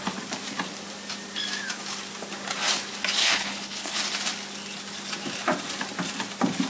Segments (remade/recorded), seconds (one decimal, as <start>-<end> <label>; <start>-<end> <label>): 0.0-3.2 recorded; 3.2-4.0 remade; 4.0-6.7 recorded